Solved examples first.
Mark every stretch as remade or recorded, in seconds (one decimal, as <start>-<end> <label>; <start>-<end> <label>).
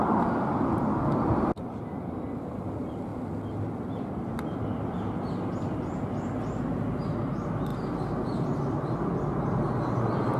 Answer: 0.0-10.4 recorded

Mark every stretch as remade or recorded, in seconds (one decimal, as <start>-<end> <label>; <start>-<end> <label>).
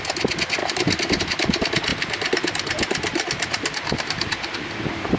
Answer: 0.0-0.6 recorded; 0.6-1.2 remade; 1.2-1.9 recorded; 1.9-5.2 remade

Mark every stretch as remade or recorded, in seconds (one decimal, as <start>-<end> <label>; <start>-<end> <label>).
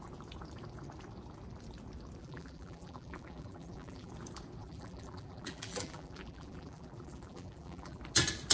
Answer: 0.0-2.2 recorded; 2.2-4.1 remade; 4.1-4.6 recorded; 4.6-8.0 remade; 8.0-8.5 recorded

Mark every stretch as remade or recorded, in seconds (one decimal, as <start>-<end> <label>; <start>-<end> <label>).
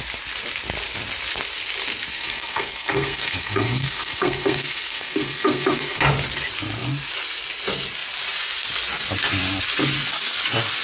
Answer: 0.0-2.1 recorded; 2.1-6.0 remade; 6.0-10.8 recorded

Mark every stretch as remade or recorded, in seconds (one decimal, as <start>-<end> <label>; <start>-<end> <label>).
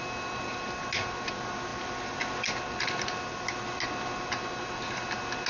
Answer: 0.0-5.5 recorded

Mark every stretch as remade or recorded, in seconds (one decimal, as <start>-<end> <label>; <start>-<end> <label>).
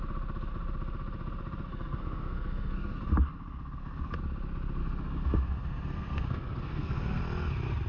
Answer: 0.0-1.7 recorded; 1.7-3.0 remade; 3.0-4.8 recorded; 4.8-7.2 remade; 7.2-7.9 recorded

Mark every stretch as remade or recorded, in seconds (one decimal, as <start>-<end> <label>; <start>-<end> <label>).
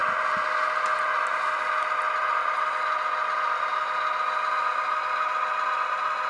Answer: 0.0-6.3 recorded